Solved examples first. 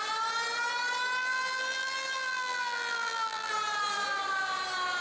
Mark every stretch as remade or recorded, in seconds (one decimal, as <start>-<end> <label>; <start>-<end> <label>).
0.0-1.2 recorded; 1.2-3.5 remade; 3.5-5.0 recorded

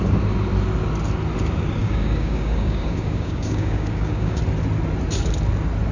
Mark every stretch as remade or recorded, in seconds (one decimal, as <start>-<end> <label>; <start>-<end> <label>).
0.0-1.8 recorded; 1.8-4.4 remade; 4.4-5.9 recorded

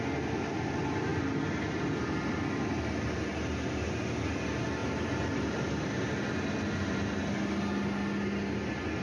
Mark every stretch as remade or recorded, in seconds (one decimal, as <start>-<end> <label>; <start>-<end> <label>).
0.0-4.8 recorded; 4.8-5.6 remade; 5.6-9.0 recorded